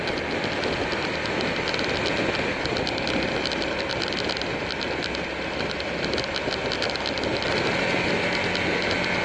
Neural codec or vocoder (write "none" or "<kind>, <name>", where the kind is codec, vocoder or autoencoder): none